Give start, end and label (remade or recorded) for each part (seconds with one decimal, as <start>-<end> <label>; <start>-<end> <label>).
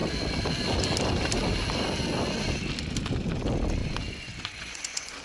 0.0-3.8 recorded; 3.8-5.2 remade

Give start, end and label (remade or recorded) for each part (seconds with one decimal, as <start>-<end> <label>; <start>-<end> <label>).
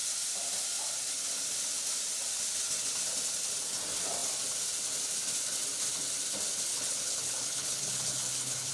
0.0-6.7 recorded; 6.7-8.7 remade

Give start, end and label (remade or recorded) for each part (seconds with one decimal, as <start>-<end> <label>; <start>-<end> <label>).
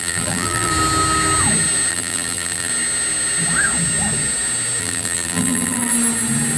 0.0-0.7 remade; 0.7-1.9 recorded; 1.9-2.7 remade; 2.7-4.8 recorded; 4.8-5.9 remade; 5.9-6.6 recorded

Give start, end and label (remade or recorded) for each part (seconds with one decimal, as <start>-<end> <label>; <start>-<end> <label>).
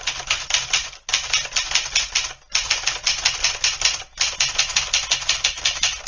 0.0-6.1 recorded